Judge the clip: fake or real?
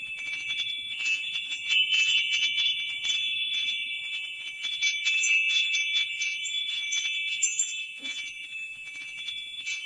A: fake